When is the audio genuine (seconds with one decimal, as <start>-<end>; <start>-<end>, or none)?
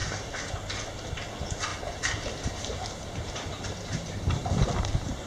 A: 0.5-1.7; 4.7-5.3